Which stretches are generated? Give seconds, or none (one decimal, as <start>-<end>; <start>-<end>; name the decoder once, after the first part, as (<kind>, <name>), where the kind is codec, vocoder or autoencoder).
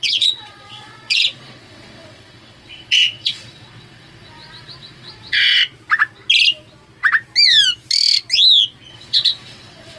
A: 0.0-5.6 (vocoder, WaveNeXt); 8.9-10.0